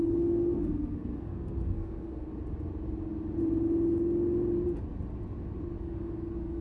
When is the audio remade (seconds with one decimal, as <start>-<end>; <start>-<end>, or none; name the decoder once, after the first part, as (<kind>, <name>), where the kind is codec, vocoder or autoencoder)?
0.0-2.3 (codec, SNAC); 5.8-6.6